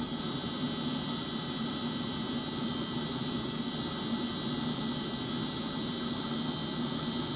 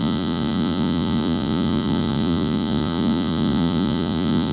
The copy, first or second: second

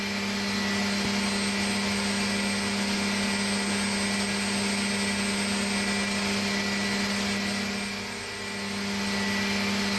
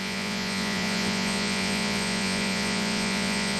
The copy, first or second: second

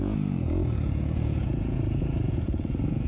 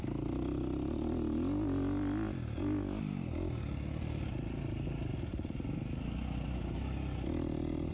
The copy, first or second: first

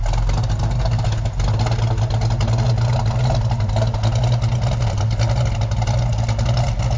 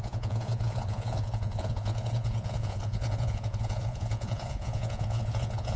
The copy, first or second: second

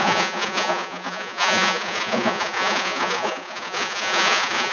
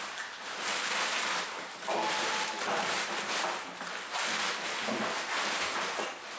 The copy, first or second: first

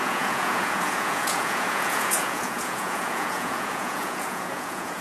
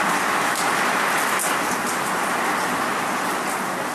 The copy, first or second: first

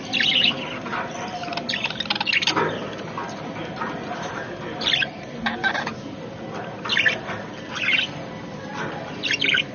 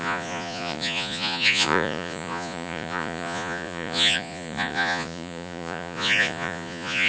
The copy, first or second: second